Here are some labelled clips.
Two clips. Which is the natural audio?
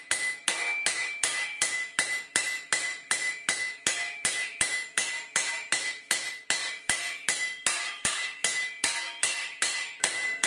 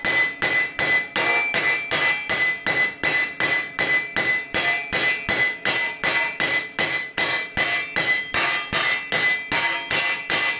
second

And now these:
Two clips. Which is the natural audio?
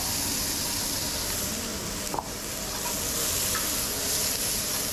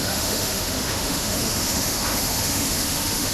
first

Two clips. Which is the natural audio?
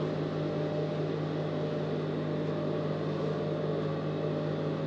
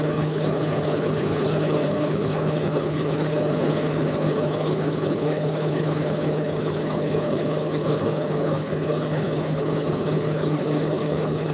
first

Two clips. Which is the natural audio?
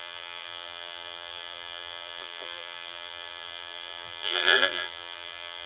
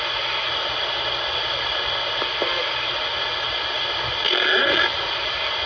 second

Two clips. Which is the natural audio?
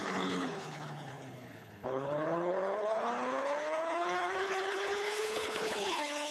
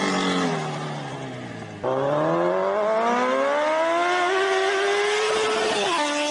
second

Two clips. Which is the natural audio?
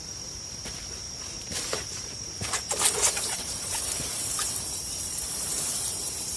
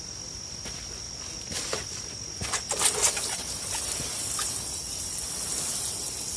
second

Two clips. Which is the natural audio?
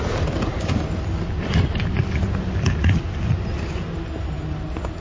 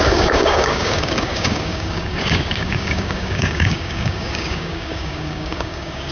first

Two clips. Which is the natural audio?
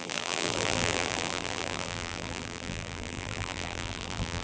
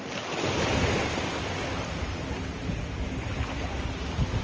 second